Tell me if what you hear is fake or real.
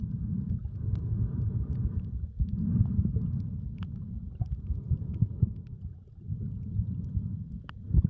real